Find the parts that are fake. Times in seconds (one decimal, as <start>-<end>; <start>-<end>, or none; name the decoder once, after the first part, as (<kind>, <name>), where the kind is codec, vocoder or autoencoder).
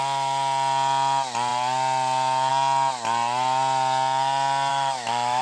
4.7-5.4 (autoencoder, DAC-VAE)